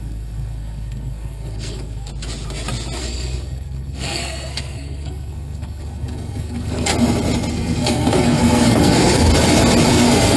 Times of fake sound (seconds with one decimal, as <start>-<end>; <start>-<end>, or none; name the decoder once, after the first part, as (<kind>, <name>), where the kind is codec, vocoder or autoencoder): 0.0-2.1 (codec, SNAC); 3.0-6.9; 7.5-9.3; 9.9-10.4